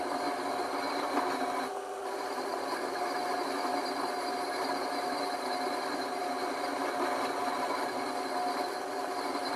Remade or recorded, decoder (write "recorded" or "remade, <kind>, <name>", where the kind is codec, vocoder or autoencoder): recorded